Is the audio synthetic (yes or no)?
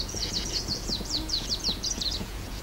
yes